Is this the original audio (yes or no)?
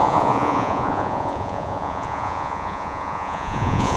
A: no